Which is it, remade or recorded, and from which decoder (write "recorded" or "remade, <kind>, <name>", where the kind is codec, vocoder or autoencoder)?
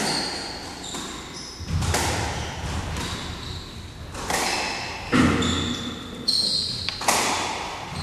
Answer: recorded